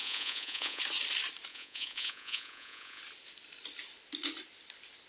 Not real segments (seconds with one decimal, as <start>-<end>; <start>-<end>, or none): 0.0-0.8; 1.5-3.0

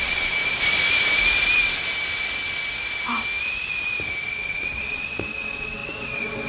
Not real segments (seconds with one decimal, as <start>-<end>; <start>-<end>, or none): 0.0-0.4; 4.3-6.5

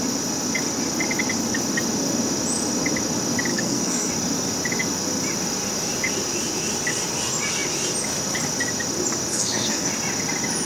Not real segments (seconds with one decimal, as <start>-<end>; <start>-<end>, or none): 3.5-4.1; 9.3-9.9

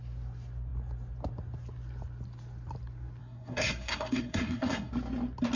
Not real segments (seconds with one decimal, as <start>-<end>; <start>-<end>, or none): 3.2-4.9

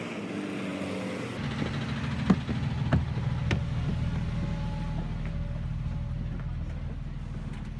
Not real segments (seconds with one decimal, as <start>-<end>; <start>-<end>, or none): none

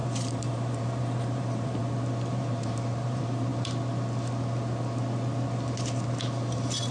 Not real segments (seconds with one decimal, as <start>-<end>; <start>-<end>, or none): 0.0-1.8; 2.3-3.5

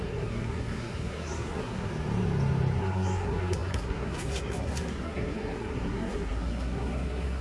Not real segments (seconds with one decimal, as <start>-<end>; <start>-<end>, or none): 0.0-1.9; 2.8-7.4

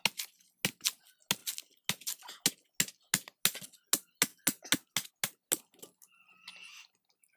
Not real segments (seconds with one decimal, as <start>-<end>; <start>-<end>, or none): none